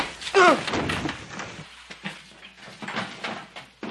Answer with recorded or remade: recorded